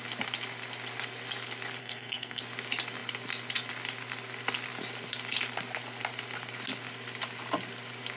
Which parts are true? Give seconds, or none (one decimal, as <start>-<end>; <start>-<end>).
0.0-1.8; 2.4-8.2